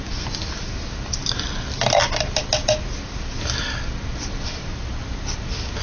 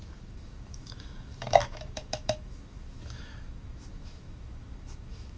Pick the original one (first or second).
first